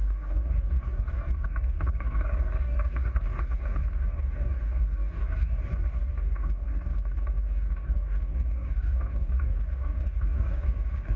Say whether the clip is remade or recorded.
remade